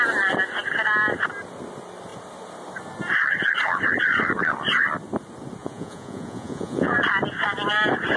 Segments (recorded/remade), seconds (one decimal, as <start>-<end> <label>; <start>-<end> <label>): 0.0-5.6 recorded; 5.6-7.0 remade; 7.0-8.2 recorded